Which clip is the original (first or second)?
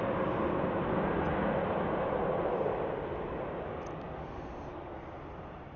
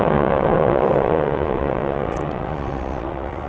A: first